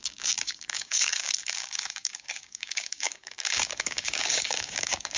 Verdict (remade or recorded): remade